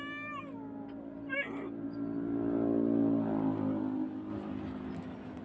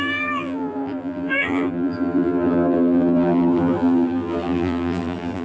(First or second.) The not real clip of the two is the second